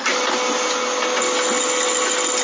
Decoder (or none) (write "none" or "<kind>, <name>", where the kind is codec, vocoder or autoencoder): none